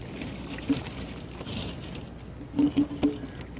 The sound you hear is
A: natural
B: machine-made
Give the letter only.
A